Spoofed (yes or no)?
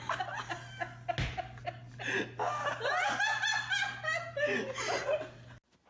no